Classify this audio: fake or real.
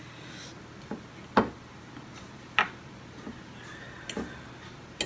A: real